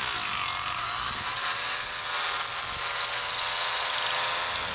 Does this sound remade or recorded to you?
recorded